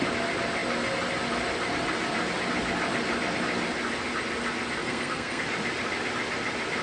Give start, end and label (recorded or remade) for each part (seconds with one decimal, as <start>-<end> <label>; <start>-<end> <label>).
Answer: 0.0-4.8 recorded; 4.8-5.4 remade; 5.4-6.8 recorded